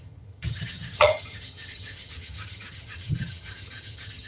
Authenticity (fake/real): fake